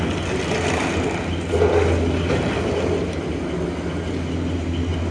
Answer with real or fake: real